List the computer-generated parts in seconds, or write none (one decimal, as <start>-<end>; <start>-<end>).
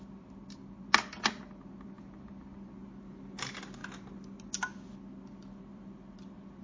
none